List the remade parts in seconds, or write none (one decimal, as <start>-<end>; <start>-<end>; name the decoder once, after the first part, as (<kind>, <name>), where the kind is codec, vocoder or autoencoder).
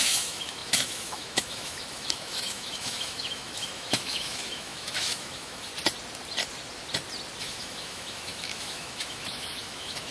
0.0-5.7 (autoencoder, DAC-VAE); 7.4-10.1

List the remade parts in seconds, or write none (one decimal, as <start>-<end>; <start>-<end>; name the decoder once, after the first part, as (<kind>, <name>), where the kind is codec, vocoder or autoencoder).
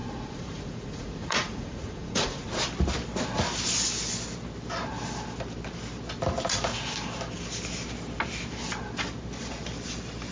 0.0-2.5 (vocoder, Vocos)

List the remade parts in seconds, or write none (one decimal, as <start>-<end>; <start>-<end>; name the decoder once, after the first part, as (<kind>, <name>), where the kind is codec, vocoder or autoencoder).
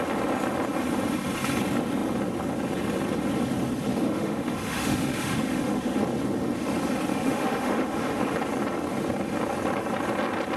3.9-6.0 (autoencoder, DAC-VAE); 7.1-8.2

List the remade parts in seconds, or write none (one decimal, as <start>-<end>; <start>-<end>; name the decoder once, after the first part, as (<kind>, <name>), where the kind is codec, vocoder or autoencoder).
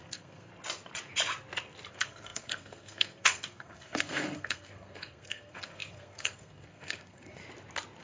0.0-0.5 (codec, SNAC); 1.9-7.4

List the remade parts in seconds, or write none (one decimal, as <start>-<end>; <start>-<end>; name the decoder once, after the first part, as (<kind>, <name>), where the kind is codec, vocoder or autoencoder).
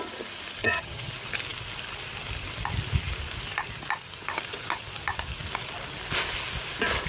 0.6-1.1 (vocoder, HiFi-GAN)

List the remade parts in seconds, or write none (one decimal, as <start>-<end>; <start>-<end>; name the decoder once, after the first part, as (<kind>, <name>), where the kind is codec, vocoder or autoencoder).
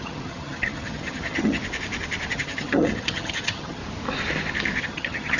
0.0-1.6 (vocoder, HiFi-GAN); 2.3-3.8; 4.8-5.4